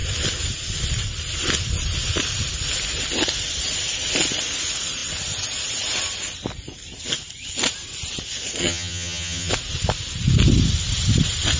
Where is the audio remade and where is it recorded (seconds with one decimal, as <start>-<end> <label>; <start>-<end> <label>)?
0.0-8.6 recorded; 8.6-9.5 remade; 9.5-11.6 recorded